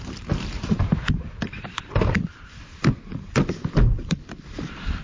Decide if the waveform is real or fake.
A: fake